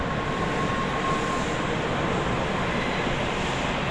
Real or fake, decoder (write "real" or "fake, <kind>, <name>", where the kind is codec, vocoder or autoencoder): real